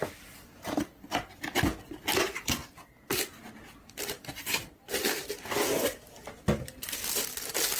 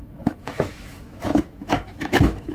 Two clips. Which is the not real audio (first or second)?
second